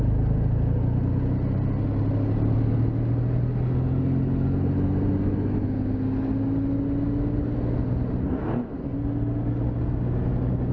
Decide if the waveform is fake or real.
real